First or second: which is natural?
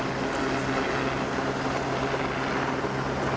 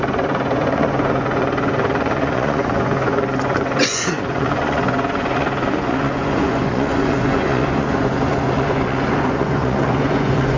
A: first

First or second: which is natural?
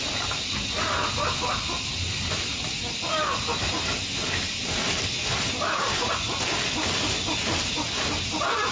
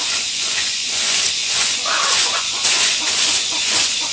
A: first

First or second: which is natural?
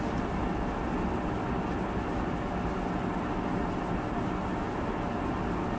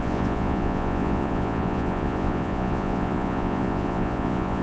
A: first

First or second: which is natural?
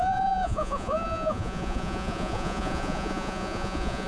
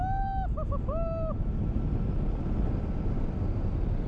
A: second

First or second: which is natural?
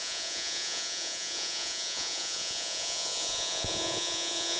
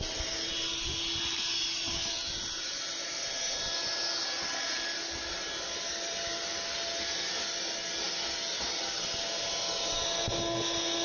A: second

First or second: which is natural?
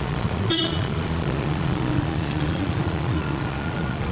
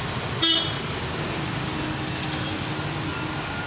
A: second